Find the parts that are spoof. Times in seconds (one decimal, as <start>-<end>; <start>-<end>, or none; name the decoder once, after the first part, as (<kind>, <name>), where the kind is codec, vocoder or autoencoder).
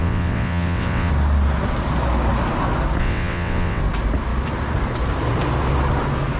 0.0-1.1 (vocoder, WaveNeXt); 3.0-3.8